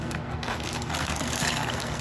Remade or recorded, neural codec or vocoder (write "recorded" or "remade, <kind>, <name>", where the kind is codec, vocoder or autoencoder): remade, codec, SNAC